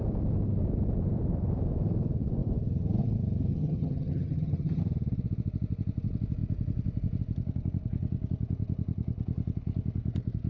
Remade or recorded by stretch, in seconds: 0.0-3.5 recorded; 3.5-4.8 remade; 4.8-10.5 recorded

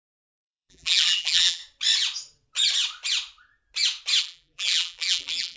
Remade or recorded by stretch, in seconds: 0.0-1.6 remade; 1.6-4.2 recorded; 4.2-5.6 remade